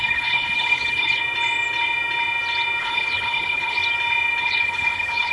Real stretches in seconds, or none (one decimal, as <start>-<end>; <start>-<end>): 1.2-2.8; 3.8-4.4